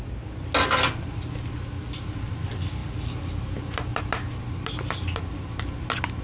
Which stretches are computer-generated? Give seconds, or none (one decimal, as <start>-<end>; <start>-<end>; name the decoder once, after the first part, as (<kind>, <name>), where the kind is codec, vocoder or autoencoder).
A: 2.8-4.0 (vocoder, BigVGAN v2)